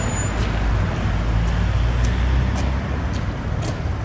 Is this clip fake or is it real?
real